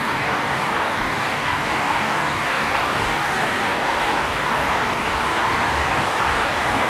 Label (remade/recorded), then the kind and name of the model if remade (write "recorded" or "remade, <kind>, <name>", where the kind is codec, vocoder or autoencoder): remade, codec, DAC